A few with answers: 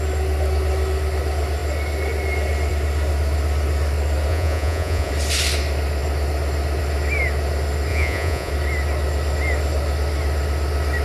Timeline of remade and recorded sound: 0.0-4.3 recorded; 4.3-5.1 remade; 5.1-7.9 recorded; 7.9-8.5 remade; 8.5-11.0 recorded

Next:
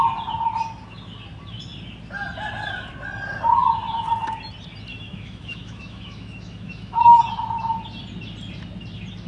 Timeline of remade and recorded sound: 0.0-4.9 recorded; 4.9-7.2 remade; 7.2-9.3 recorded

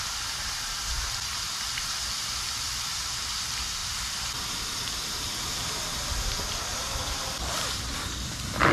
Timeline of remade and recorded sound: 0.0-8.7 recorded